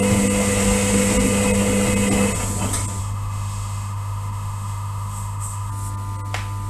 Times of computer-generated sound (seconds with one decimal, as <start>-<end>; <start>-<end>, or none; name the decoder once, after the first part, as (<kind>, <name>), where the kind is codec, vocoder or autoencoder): 3.0-5.7 (autoencoder, DAC-VAE)